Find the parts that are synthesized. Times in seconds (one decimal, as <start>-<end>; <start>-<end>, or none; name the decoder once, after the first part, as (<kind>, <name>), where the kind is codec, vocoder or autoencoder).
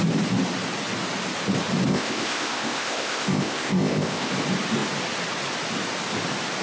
1.9-4.3 (codec, ZipCodec)